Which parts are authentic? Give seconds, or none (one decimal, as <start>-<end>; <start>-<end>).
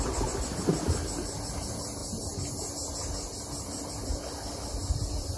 0.0-5.4